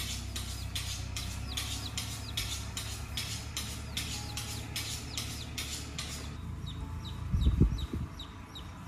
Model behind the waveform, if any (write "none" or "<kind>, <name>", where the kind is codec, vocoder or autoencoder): none